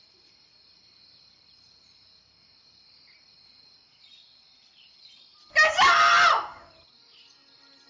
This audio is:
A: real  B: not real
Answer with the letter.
A